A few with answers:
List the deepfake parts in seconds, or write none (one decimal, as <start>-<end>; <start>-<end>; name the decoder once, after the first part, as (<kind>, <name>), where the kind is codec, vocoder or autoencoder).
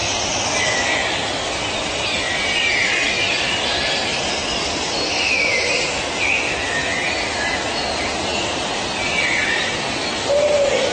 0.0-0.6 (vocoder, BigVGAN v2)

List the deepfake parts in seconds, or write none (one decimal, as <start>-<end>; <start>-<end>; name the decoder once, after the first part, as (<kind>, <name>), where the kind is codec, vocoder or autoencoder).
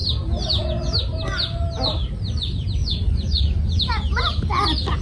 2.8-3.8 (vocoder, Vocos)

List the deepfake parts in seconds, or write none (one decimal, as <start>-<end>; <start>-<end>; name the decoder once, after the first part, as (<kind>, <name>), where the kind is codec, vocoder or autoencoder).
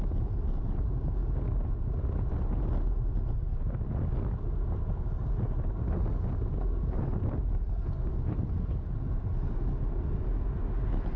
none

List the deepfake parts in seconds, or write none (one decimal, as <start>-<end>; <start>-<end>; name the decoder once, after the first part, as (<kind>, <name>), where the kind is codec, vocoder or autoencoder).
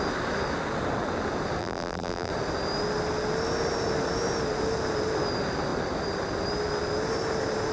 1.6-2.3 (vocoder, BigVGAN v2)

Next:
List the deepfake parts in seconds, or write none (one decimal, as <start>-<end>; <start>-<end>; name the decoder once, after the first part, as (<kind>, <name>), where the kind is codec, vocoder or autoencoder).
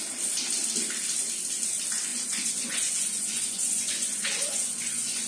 2.1-5.3 (vocoder, Vocos)